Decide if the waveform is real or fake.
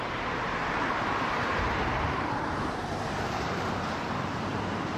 fake